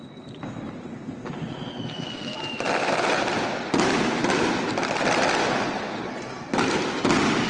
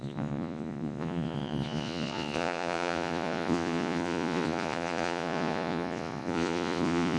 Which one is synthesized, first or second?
second